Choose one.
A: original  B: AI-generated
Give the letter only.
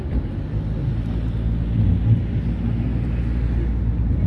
A